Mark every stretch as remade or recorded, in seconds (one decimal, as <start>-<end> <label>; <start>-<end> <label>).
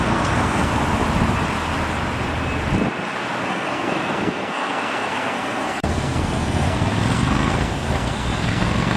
0.0-0.7 remade; 0.7-3.5 recorded; 3.5-9.0 remade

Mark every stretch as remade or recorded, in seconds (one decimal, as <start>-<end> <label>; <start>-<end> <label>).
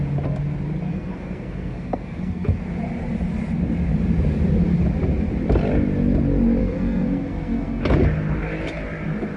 0.0-0.9 recorded; 0.9-2.6 remade; 2.6-6.6 recorded; 6.6-7.8 remade; 7.8-9.4 recorded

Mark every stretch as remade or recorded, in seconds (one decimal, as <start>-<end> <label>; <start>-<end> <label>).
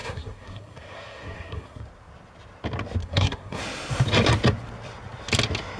0.0-1.8 remade; 1.8-3.0 recorded; 3.0-3.6 remade; 3.6-5.8 recorded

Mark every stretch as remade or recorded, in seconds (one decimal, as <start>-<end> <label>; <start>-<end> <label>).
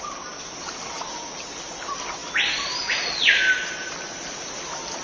0.0-5.0 recorded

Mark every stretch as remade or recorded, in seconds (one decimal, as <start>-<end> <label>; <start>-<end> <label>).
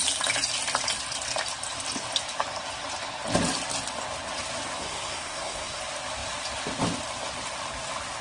0.0-4.8 recorded; 4.8-5.8 remade; 5.8-8.2 recorded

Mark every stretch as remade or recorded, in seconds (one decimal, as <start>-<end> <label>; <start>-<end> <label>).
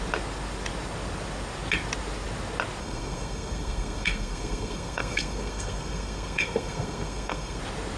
0.0-2.8 recorded; 2.8-7.6 remade; 7.6-8.0 recorded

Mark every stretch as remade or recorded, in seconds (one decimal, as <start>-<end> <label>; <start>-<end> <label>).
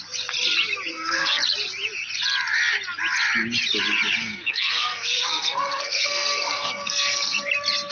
0.0-0.9 recorded; 0.9-1.4 remade; 1.4-4.2 recorded; 4.2-7.5 remade; 7.5-7.9 recorded